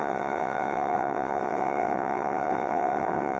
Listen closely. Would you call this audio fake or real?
fake